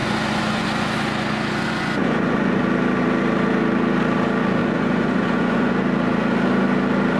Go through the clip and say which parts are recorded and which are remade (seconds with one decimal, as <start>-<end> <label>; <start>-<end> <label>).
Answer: 0.0-2.6 remade; 2.6-4.6 recorded; 4.6-5.7 remade; 5.7-7.2 recorded